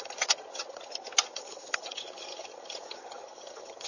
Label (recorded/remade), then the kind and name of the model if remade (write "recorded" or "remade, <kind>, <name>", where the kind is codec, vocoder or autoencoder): remade, vocoder, HiFi-GAN